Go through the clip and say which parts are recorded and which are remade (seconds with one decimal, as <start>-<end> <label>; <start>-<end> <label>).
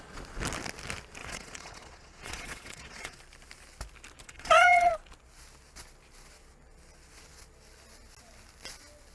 0.0-1.2 recorded; 1.2-3.2 remade; 3.2-4.2 recorded; 4.2-4.9 remade; 4.9-9.1 recorded